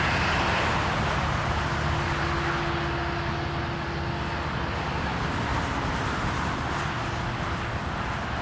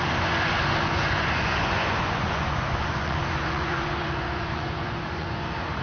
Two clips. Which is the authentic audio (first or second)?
first